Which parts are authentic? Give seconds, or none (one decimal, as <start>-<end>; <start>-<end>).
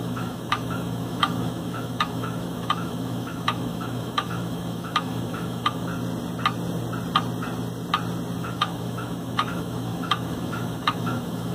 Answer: 5.9-8.4